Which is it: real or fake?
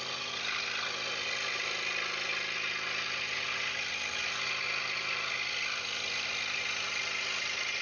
real